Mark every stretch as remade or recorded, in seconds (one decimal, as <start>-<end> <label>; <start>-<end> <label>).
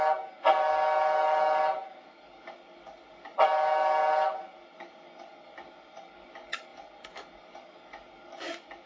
0.0-8.9 remade